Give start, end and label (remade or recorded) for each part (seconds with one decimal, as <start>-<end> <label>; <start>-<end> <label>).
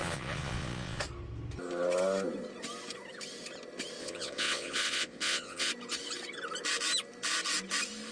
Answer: 0.0-1.0 remade; 1.0-4.0 recorded; 4.0-5.7 remade; 5.7-8.1 recorded